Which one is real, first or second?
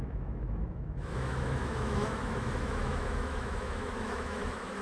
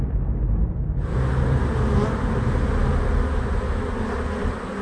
second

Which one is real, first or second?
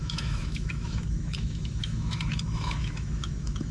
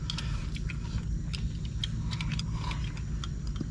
second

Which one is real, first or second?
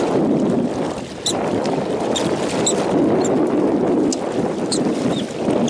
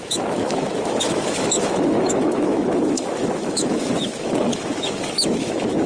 first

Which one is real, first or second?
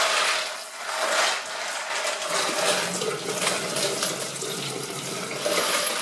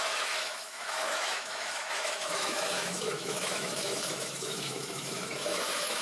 first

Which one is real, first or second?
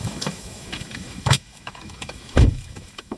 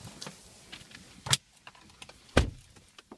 second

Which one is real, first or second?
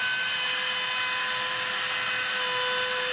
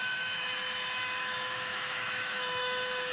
first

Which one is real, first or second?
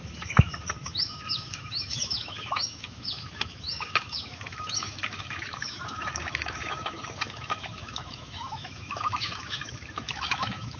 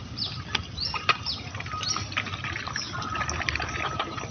second